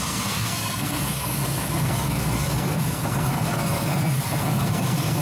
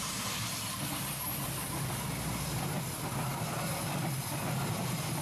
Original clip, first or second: second